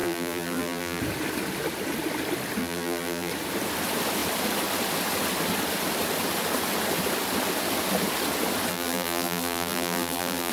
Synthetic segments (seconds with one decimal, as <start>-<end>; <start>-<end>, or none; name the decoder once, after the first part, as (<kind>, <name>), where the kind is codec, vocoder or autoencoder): 0.0-1.0 (vocoder, BigVGAN v2); 2.6-3.3; 8.7-10.5